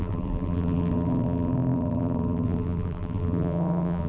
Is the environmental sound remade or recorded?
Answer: remade